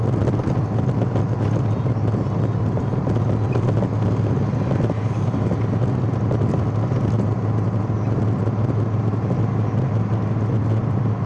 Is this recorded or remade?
recorded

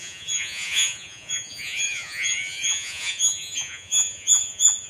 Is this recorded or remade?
remade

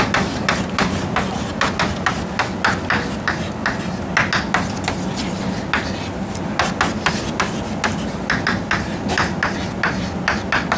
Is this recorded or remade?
recorded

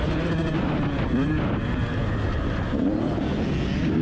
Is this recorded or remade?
recorded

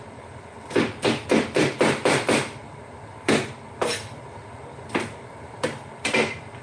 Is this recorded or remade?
recorded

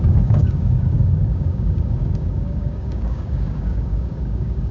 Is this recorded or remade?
remade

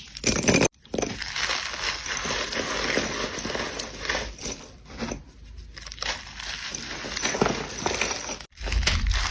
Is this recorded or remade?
recorded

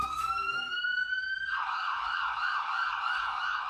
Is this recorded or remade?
remade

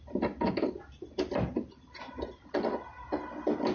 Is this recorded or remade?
recorded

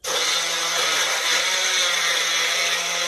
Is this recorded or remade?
recorded